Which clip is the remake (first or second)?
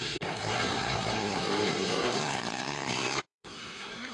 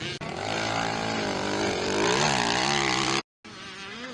first